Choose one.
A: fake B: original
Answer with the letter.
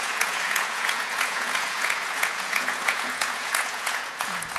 A